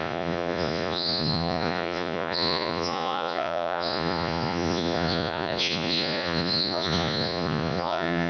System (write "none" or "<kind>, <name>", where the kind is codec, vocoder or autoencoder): vocoder, Vocos